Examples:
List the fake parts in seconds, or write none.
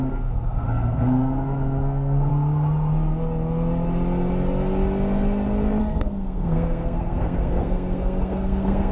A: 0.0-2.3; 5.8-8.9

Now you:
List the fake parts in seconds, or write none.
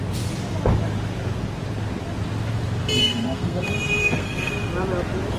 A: 3.0-3.6; 4.0-4.5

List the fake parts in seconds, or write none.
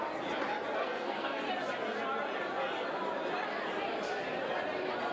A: 0.8-1.4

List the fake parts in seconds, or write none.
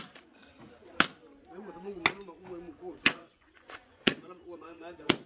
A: 0.0-0.5; 2.7-5.3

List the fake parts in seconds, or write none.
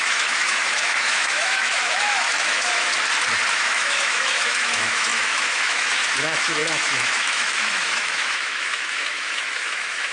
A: 0.0-2.9; 3.5-10.1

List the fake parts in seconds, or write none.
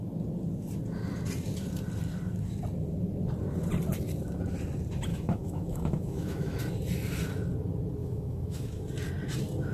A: 5.1-6.6; 8.0-8.8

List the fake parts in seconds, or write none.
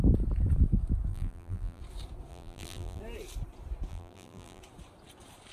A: 1.1-1.8; 2.3-3.0; 3.9-4.6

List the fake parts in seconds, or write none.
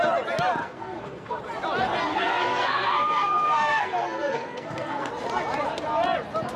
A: 0.6-1.4; 2.1-5.1